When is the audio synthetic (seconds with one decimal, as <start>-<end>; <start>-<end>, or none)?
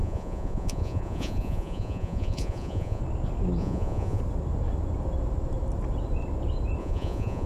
0.0-3.0; 3.6-4.2; 6.8-7.5